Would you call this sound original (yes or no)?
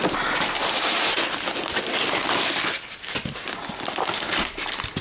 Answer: yes